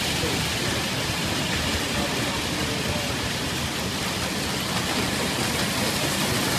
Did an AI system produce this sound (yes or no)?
no